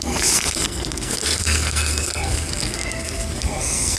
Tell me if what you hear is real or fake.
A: fake